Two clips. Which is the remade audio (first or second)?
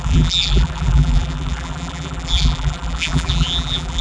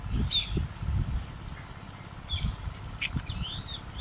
first